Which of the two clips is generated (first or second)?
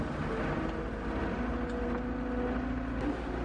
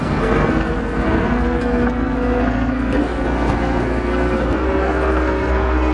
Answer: second